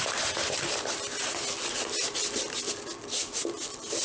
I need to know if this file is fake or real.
real